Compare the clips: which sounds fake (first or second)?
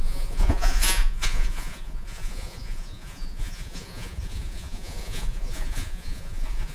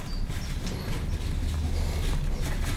first